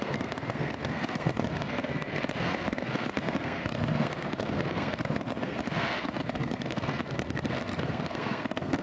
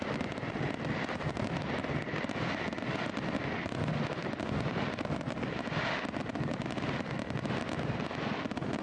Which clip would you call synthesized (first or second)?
first